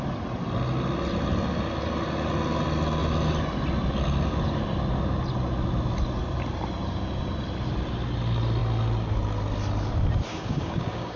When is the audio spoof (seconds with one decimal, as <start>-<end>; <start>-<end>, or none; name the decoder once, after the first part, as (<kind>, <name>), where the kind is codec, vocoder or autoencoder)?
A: 10.3-11.2 (codec, DAC)